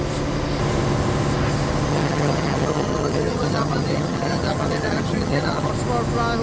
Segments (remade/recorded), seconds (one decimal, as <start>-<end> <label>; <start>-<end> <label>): 0.0-1.9 recorded; 1.9-5.7 remade; 5.7-6.4 recorded